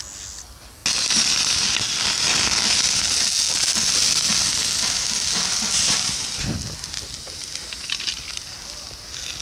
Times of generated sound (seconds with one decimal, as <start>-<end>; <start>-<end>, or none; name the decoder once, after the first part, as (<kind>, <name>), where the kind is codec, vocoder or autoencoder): none

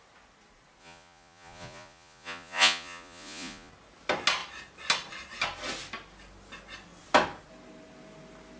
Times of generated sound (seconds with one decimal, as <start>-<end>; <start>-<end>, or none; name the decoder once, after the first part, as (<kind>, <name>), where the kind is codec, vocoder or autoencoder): 0.8-3.7 (vocoder, Vocos)

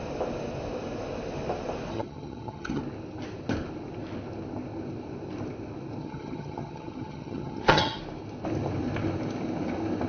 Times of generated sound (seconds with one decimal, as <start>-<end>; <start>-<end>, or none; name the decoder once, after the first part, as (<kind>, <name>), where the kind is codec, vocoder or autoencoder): 1.9-2.8 (vocoder, HiFi-GAN); 6.0-8.0